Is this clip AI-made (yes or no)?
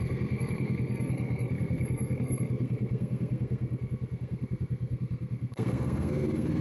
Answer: yes